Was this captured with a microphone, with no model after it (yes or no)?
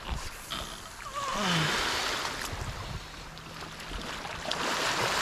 yes